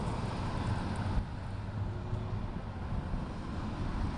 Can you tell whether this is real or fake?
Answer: real